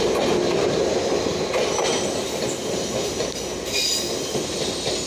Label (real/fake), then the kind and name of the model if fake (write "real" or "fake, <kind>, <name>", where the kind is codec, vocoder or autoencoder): real